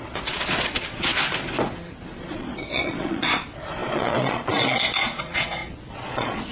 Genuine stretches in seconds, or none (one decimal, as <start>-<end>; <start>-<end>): 1.1-2.2